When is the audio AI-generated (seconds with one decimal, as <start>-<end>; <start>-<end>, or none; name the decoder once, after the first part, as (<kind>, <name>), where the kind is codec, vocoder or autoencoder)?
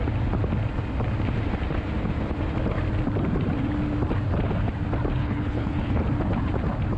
5.2-6.0 (codec, HILCodec)